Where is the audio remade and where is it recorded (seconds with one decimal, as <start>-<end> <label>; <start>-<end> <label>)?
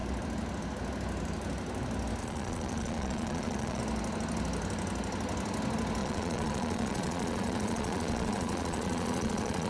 0.0-2.2 recorded; 2.2-3.8 remade; 3.8-6.0 recorded; 6.0-9.7 remade